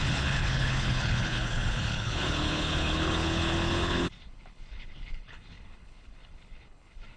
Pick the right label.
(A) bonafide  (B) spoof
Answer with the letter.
B